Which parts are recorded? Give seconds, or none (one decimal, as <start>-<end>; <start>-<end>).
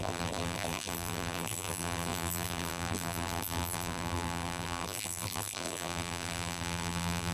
none